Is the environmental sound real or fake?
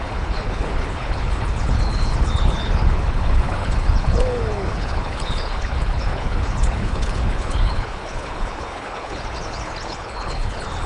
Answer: fake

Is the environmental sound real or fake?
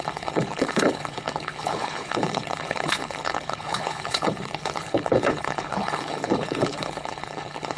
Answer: fake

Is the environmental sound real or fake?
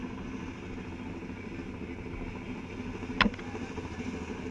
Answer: real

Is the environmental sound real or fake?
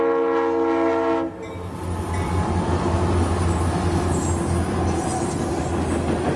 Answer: real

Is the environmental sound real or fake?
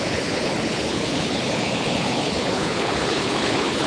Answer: fake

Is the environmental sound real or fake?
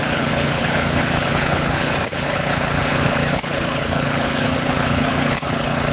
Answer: fake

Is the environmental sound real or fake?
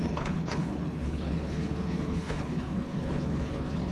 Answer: fake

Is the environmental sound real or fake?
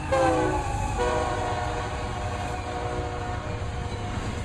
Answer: real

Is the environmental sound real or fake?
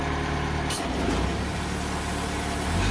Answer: real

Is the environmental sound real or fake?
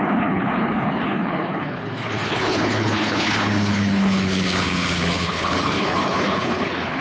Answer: fake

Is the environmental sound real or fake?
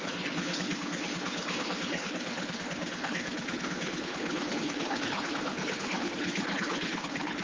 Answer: fake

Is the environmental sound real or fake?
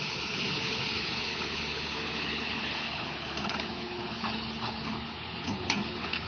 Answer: fake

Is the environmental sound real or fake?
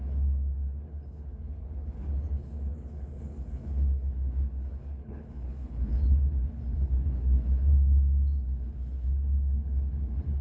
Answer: fake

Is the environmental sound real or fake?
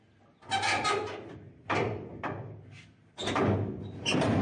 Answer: real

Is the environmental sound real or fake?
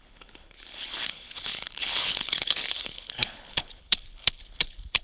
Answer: fake